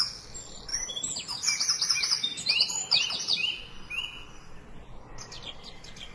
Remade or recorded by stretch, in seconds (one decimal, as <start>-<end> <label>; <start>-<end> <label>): 0.0-0.7 recorded; 0.7-3.6 remade; 3.6-6.1 recorded